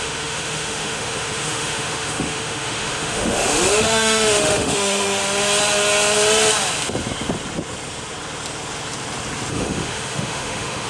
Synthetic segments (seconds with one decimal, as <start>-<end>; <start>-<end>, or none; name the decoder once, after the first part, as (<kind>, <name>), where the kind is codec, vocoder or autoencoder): 0.0-5.2 (autoencoder, DAC-VAE); 9.5-10.9